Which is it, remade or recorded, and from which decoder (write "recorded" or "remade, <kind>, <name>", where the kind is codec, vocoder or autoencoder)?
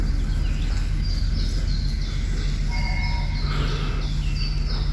recorded